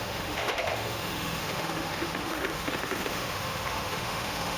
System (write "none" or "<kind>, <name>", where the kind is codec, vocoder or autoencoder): autoencoder, DAC-VAE